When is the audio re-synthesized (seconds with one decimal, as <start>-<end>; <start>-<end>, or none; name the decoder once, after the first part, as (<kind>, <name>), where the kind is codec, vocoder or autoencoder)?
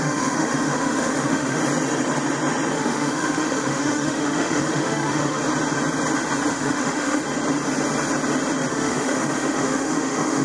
0.0-1.6 (autoencoder, DAC-VAE); 2.7-5.4; 6.5-7.2; 8.7-10.4